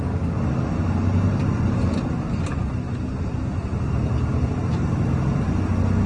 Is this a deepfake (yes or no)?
no